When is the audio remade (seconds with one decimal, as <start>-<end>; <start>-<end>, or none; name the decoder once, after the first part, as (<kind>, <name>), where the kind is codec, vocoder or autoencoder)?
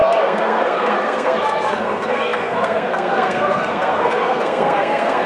0.0-5.3 (codec, SNAC)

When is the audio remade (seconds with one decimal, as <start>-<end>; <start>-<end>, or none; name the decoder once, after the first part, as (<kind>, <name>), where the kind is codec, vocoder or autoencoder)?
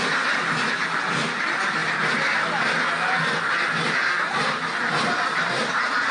none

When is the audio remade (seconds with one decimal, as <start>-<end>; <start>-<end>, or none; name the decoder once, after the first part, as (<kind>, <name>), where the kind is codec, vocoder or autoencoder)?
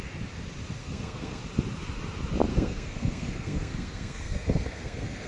0.8-1.4 (codec, SNAC); 2.5-5.3